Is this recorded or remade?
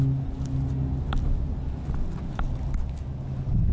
recorded